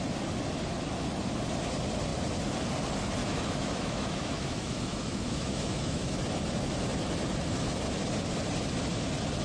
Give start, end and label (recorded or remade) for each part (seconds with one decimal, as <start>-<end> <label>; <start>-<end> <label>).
0.0-3.2 recorded; 3.2-6.2 remade; 6.2-9.4 recorded